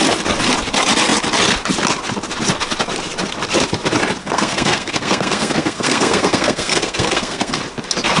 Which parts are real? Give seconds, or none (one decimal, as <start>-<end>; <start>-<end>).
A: 0.0-4.2; 7.6-8.2